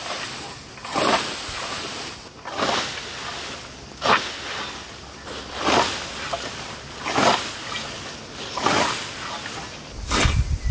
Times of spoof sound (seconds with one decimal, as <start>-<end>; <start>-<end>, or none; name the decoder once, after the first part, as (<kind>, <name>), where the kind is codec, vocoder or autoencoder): none